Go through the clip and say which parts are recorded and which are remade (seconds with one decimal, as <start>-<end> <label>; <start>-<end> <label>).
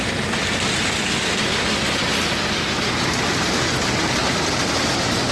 0.0-4.2 recorded; 4.2-5.3 remade